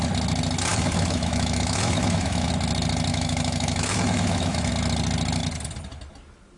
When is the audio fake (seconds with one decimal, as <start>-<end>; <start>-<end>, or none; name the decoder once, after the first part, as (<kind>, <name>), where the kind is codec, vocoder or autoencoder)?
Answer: 0.7-2.5 (autoencoder, DAC-VAE); 3.1-4.7

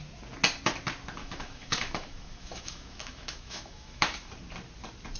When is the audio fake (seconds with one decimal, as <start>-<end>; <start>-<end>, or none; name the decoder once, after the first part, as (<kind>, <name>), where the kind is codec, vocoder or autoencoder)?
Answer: 1.2-4.3 (autoencoder, DAC-VAE)

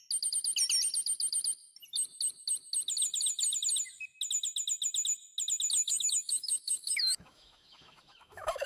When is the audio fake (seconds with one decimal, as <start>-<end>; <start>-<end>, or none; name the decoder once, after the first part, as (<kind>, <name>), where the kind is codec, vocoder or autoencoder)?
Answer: 5.8-8.7 (autoencoder, DAC-VAE)

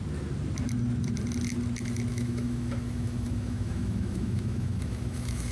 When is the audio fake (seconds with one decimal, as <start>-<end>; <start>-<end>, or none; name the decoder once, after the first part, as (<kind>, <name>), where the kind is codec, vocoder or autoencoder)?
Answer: 2.1-5.5 (autoencoder, DAC-VAE)

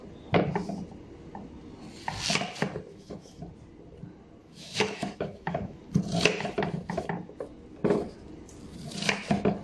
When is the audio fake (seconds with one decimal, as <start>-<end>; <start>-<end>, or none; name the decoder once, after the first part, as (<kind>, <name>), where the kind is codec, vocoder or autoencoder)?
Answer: 2.9-3.4 (autoencoder, DAC-VAE); 4.4-5.8

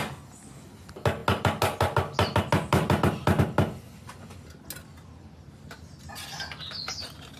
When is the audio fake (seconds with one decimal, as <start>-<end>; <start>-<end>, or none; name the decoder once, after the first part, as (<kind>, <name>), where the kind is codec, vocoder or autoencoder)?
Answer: none

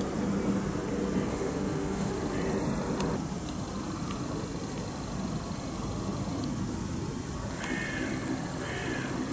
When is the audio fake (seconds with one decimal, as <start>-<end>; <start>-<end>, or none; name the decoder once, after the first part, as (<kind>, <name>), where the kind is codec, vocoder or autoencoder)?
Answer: 1.3-2.1 (autoencoder, DAC-VAE)